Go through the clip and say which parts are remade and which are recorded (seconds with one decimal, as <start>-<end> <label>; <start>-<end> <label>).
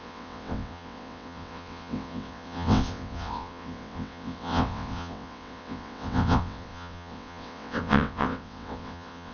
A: 0.0-9.3 remade